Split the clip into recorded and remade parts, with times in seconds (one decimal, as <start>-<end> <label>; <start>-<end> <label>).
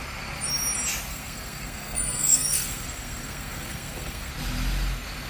0.0-1.1 recorded; 1.1-4.3 remade; 4.3-5.3 recorded